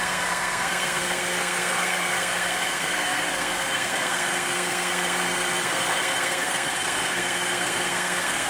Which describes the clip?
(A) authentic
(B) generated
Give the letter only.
B